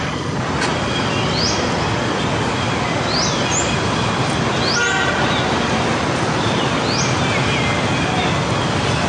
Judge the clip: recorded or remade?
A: recorded